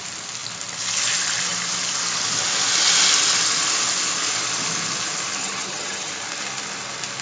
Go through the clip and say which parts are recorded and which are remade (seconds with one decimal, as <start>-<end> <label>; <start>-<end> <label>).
0.0-5.4 recorded; 5.4-6.1 remade; 6.1-7.2 recorded